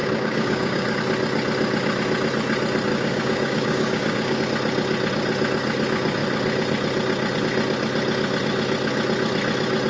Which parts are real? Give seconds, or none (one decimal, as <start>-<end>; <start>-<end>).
1.0-2.9; 4.4-9.9